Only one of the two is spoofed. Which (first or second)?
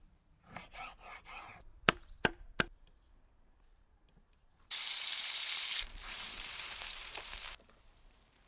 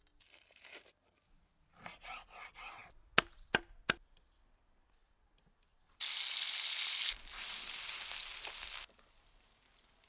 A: first